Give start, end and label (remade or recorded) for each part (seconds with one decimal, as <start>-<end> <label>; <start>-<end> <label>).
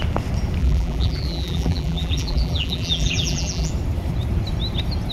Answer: 0.0-0.6 recorded; 0.6-3.7 remade; 3.7-5.1 recorded